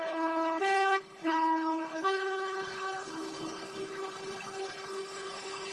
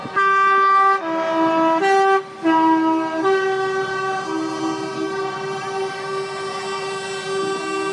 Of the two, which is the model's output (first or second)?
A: first